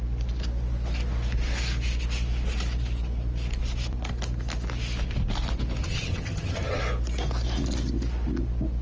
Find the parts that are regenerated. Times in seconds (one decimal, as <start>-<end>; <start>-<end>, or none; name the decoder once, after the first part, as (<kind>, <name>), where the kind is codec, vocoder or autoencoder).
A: 5.8-6.8 (vocoder, HiFi-GAN)